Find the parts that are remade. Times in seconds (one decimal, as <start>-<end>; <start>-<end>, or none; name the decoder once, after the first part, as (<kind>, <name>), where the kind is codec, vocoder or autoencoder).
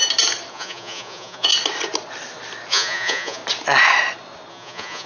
0.5-1.5 (vocoder, Vocos); 2.7-3.4; 4.5-5.1